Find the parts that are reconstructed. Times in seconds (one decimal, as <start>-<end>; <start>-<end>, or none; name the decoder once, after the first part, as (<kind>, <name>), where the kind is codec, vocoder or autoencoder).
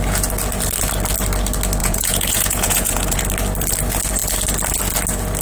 1.8-3.2 (vocoder, Vocos)